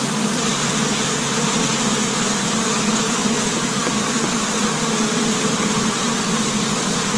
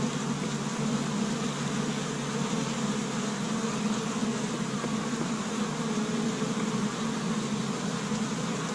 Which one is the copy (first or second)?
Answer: first